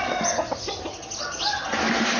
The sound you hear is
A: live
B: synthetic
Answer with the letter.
A